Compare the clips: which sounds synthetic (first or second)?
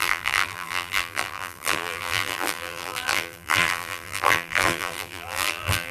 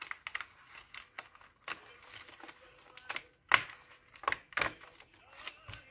first